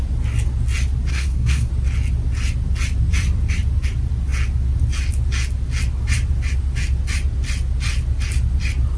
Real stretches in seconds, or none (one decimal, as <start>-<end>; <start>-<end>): 0.0-1.1; 1.7-9.0

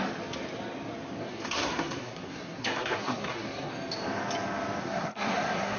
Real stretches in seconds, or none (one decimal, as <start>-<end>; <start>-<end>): 0.0-1.2; 3.7-4.8

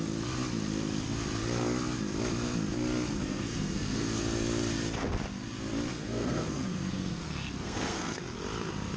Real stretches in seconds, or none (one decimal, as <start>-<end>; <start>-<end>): 0.0-3.2; 4.2-5.9; 8.2-9.0

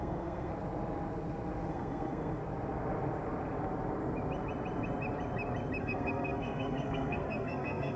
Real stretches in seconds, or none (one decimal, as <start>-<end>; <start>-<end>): 0.5-1.7; 2.4-5.8

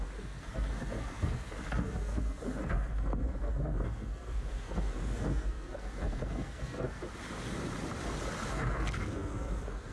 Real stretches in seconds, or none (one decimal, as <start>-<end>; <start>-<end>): 7.0-8.5

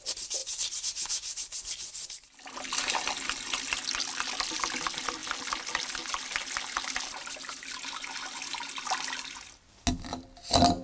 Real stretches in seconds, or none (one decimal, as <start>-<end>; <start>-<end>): 0.0-10.8

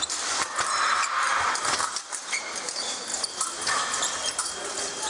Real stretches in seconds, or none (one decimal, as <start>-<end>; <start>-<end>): 0.0-5.1